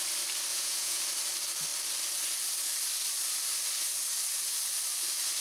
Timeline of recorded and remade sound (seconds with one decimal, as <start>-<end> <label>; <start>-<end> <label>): 0.0-0.5 recorded; 0.5-1.0 remade; 1.0-5.4 recorded